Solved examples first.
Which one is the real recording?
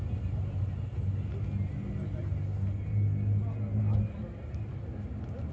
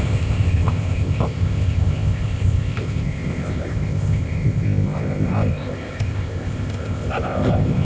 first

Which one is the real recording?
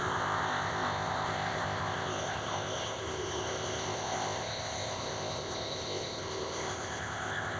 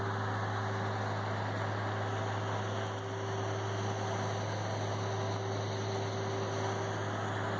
second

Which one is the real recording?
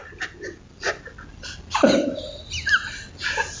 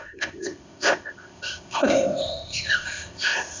first